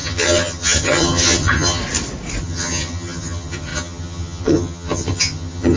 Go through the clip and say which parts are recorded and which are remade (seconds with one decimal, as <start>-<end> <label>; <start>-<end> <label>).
0.0-1.8 remade; 1.8-2.4 recorded; 2.4-5.8 remade